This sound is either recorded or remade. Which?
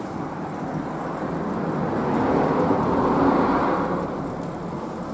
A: recorded